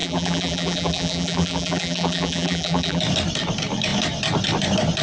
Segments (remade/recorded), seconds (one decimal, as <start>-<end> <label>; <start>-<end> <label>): 0.0-3.0 remade; 3.0-5.0 recorded